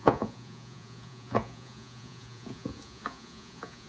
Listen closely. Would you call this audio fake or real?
fake